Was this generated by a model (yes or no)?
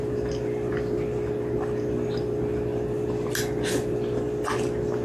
no